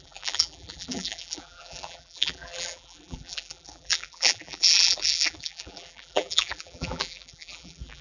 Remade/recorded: remade